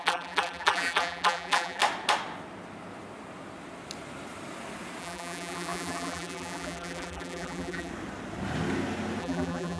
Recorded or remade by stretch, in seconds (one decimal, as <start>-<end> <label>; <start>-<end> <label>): 0.0-1.8 remade; 1.8-5.0 recorded; 5.0-7.9 remade; 7.9-9.2 recorded; 9.2-9.8 remade